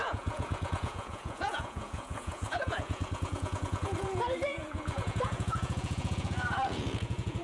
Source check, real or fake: fake